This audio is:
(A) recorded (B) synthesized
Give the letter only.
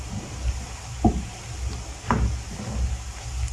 A